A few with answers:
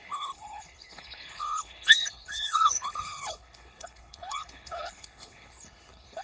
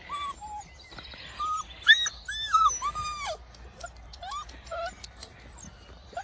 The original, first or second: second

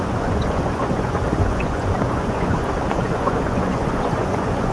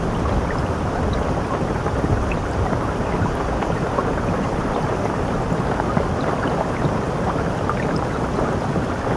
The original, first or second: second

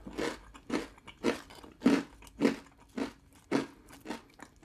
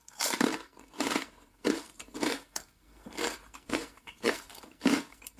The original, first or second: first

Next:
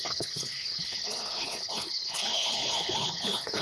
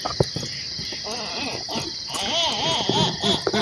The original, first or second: second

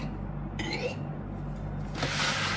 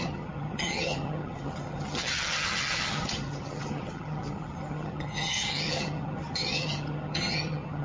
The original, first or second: first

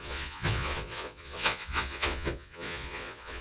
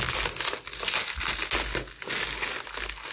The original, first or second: second